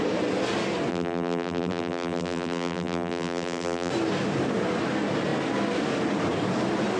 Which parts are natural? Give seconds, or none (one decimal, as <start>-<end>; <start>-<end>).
0.0-0.9; 3.9-7.0